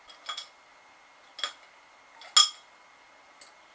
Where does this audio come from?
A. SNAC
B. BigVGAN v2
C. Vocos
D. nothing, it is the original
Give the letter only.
D